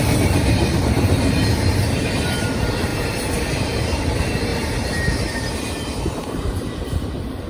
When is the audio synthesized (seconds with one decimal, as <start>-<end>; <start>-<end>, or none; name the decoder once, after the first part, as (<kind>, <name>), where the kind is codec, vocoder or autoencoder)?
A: 0.0-2.9 (vocoder, BigVGAN v2); 3.6-4.5; 6.1-7.5